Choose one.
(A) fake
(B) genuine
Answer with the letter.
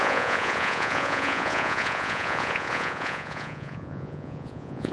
A